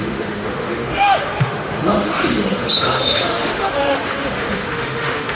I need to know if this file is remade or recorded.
remade